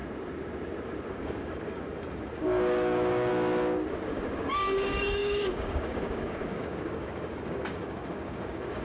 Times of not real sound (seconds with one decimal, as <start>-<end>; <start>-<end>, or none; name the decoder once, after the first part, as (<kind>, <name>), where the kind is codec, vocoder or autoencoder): 1.1-3.3 (codec, DAC); 3.9-8.8